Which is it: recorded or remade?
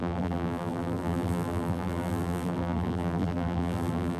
remade